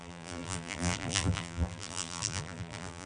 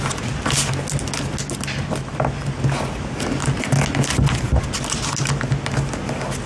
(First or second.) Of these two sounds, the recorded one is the second